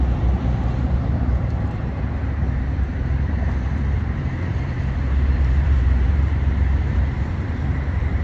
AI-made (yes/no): yes